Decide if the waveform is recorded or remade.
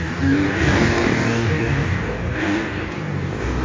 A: remade